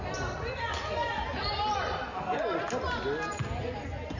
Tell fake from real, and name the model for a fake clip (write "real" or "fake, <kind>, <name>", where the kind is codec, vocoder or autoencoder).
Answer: real